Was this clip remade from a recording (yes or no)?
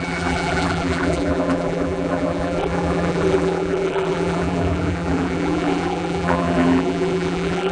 yes